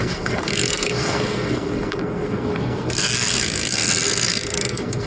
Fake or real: fake